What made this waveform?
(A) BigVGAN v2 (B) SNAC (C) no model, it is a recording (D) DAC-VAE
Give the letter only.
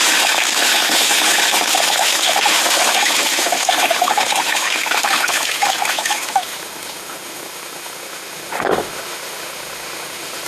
D